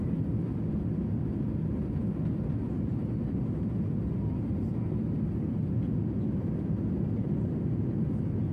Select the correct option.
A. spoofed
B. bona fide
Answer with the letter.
B